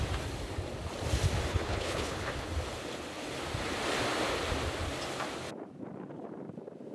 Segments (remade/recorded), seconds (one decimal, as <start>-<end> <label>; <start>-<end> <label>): 0.0-1.5 recorded; 1.5-2.5 remade; 2.5-6.9 recorded